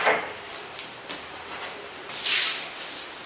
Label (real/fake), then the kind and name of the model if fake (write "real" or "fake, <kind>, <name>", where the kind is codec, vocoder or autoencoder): fake, vocoder, BigVGAN v2